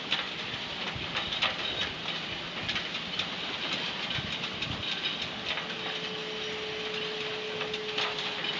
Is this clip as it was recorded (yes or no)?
yes